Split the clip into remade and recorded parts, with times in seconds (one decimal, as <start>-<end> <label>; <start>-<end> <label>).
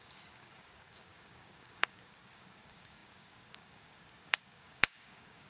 0.0-5.5 remade